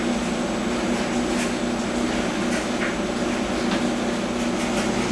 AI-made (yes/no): no